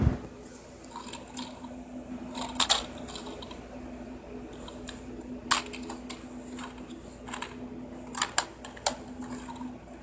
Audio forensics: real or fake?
real